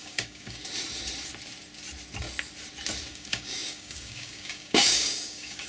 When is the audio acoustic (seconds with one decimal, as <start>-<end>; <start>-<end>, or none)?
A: 0.6-3.1